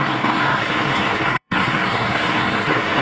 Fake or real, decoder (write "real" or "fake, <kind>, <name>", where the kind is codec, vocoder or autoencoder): fake, codec, SNAC